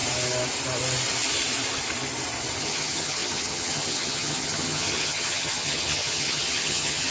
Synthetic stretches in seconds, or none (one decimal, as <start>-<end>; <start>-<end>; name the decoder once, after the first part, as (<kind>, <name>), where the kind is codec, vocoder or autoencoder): 2.6-7.1 (vocoder, HiFi-GAN)